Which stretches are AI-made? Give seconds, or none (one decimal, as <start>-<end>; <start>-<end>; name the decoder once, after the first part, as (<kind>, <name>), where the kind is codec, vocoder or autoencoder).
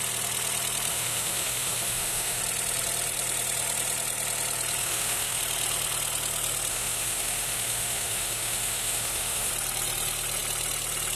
0.9-2.4 (autoencoder, DAC-VAE); 4.8-5.4; 6.7-9.5